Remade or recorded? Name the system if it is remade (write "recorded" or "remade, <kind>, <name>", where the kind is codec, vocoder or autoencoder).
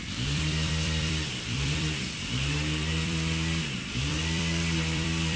remade, vocoder, BigVGAN v2